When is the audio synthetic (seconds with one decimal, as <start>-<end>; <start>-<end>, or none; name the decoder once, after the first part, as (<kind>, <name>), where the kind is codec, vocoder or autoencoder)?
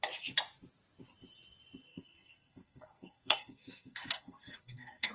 1.9-5.1 (codec, SNAC)